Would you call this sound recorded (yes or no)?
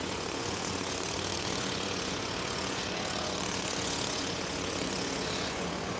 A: no